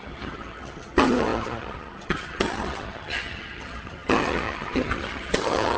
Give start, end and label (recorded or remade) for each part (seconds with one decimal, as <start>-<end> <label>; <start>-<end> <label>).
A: 0.0-5.8 remade